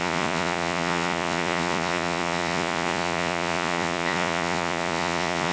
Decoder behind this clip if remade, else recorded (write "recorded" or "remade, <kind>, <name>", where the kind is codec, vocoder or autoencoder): remade, vocoder, Vocos